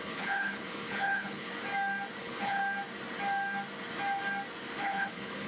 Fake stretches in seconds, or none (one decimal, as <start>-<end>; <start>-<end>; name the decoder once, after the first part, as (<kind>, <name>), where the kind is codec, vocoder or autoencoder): 0.0-1.5 (codec, HILCodec); 2.2-2.6; 4.8-5.5